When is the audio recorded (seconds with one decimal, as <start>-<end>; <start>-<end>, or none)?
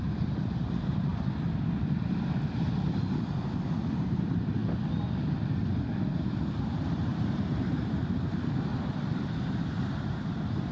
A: 1.1-3.8; 4.6-6.1; 8.7-9.5